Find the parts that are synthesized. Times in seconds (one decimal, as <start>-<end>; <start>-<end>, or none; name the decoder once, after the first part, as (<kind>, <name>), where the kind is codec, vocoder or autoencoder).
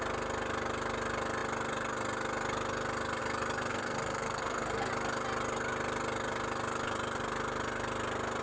3.7-4.9 (codec, SNAC)